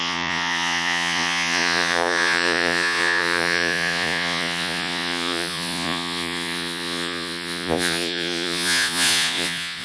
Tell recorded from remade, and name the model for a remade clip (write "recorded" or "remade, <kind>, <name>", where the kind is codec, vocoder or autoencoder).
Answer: remade, vocoder, Vocos